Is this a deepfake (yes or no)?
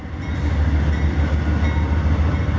no